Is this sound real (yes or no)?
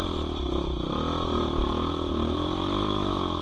yes